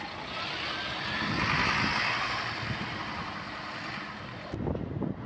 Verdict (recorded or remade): recorded